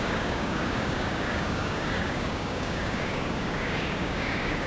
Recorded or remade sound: remade